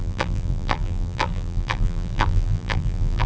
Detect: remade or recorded remade